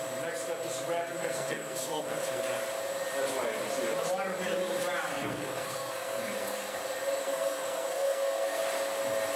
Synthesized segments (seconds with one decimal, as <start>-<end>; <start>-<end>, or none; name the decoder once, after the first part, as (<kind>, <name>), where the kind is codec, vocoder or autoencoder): 1.2-2.4 (codec, SNAC); 5.1-6.8; 7.2-8.6